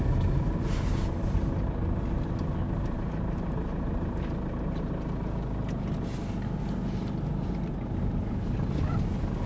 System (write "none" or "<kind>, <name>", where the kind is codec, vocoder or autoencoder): none